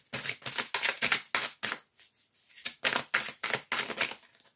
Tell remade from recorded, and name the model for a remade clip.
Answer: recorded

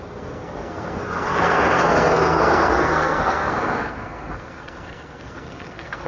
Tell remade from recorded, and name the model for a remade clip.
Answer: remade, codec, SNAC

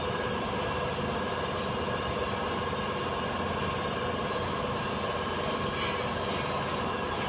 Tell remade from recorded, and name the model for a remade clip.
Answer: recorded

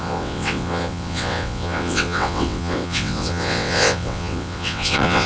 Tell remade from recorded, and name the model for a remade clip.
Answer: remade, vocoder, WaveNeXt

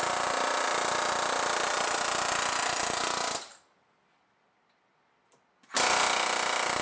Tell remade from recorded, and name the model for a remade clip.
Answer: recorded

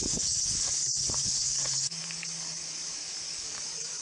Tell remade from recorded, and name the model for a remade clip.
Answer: remade, codec, DAC